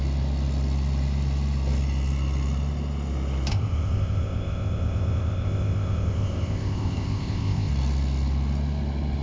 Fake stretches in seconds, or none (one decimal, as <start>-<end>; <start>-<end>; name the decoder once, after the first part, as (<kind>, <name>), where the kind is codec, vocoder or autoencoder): 3.5-7.7 (codec, ZipCodec)